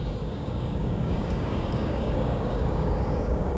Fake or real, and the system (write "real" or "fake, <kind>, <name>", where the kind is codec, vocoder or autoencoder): fake, codec, DAC